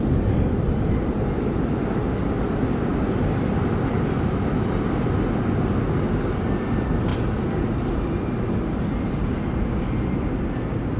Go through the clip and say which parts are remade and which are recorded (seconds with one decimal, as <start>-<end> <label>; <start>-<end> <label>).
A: 0.0-11.0 recorded